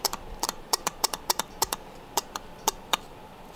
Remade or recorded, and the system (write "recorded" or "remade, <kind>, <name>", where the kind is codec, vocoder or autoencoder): remade, vocoder, BigVGAN v2